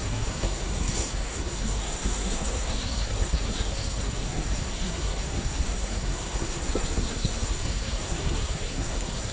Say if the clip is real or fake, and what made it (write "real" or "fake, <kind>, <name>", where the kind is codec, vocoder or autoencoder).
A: fake, codec, SNAC